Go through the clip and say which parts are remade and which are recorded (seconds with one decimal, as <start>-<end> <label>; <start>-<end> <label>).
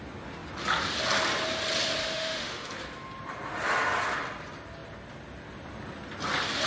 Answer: 0.0-2.0 recorded; 2.0-2.7 remade; 2.7-6.7 recorded